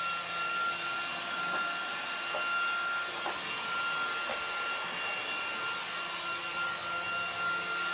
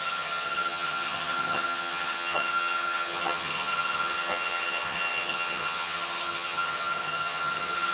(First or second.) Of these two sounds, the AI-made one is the second